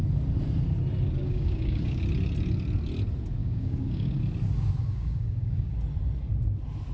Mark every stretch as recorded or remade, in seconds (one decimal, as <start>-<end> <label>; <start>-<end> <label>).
0.0-1.2 recorded; 1.2-2.0 remade; 2.0-3.4 recorded; 3.4-4.2 remade; 4.2-4.8 recorded; 4.8-5.7 remade; 5.7-6.9 recorded